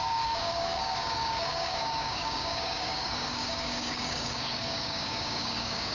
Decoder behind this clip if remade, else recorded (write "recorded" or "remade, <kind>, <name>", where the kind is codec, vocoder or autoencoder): remade, codec, DAC